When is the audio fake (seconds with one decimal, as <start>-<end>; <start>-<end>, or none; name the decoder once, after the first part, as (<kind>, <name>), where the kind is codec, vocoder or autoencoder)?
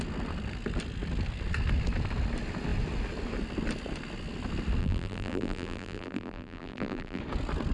4.8-7.2 (vocoder, BigVGAN v2)